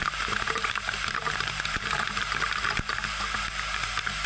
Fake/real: fake